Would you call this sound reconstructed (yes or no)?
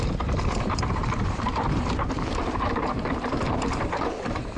yes